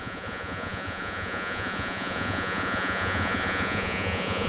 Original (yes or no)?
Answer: no